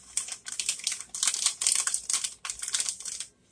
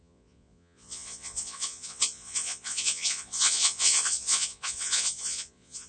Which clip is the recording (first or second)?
first